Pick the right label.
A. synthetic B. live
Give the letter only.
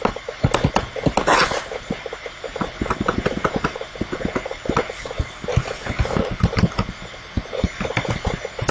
B